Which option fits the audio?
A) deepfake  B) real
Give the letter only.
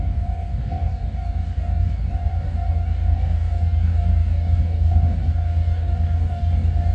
A